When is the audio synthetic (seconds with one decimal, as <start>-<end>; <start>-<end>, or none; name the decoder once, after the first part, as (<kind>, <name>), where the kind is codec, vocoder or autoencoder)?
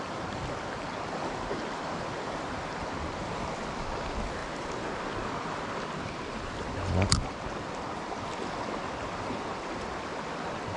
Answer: none